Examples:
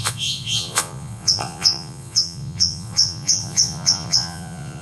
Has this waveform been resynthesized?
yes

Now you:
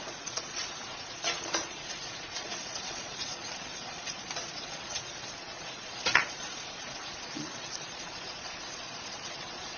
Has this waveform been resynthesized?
yes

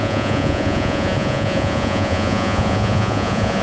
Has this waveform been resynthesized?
yes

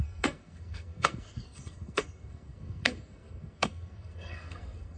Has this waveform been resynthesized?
yes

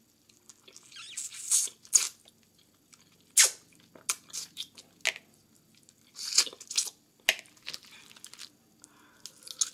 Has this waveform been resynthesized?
no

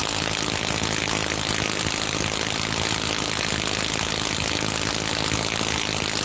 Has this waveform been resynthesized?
no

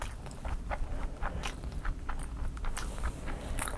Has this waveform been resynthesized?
yes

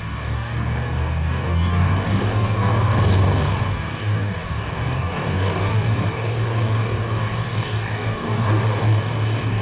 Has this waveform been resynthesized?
yes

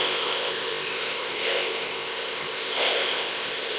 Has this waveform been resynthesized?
yes